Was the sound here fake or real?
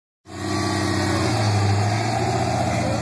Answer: real